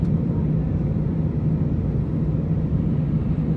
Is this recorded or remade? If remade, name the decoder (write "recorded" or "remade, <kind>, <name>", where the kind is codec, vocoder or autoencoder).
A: recorded